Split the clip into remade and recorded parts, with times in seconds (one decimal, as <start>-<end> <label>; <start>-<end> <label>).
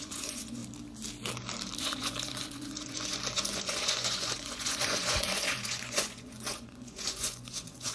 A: 0.0-0.6 remade; 0.6-1.8 recorded; 1.8-7.9 remade